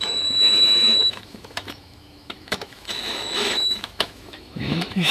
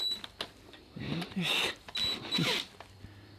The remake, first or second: first